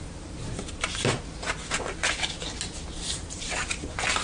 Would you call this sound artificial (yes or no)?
no